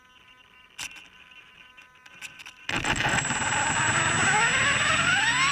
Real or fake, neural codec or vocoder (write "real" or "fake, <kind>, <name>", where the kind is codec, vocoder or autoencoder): real